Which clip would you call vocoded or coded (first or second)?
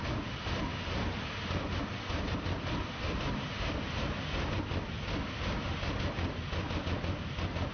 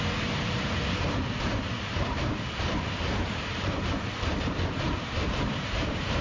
second